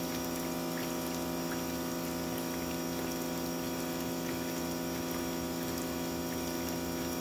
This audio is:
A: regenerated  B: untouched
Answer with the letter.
B